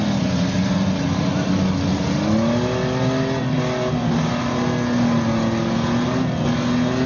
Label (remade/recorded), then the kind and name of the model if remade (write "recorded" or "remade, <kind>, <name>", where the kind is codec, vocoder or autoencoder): recorded